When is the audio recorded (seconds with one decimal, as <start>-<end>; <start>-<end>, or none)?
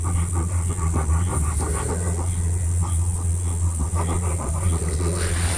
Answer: 1.3-1.9